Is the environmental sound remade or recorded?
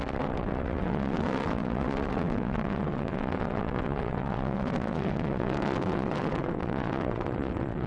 remade